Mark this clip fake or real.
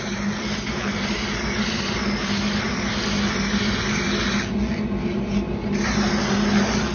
real